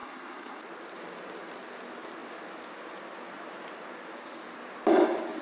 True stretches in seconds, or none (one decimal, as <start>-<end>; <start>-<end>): 0.6-5.4